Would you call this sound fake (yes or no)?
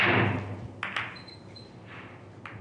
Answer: no